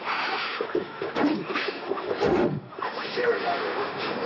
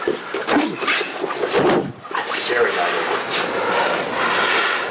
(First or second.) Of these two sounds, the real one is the second